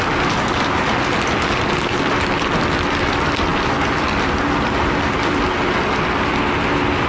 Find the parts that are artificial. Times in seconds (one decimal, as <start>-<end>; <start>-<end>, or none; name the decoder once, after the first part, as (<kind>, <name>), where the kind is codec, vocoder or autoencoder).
none